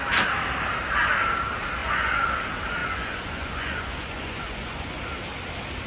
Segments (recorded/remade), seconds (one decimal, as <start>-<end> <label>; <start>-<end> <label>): 0.0-1.8 recorded; 1.8-2.3 remade; 2.3-2.8 recorded; 2.8-5.0 remade; 5.0-5.9 recorded